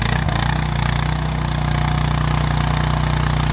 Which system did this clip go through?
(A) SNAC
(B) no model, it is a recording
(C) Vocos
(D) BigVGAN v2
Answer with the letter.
B